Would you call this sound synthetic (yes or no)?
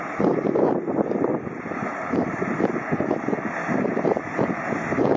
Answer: no